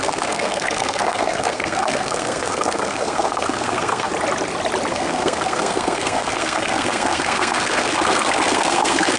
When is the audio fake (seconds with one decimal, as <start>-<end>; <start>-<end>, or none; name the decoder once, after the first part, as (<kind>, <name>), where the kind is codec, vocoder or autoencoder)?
0.0-4.1 (codec, SNAC); 4.9-9.2